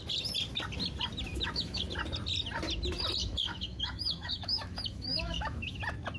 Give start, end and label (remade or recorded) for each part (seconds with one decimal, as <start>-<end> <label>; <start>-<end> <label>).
0.0-1.3 recorded; 1.3-1.8 remade; 1.8-3.2 recorded; 3.2-5.8 remade; 5.8-6.2 recorded